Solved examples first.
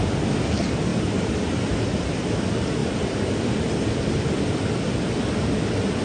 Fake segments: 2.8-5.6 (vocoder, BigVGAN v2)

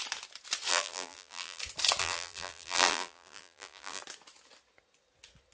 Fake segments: 0.7-1.6 (vocoder, BigVGAN v2); 2.0-4.0